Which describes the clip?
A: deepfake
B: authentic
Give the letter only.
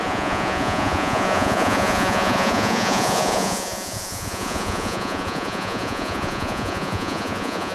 A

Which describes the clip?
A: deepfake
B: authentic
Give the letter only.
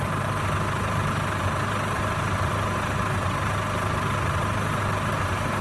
B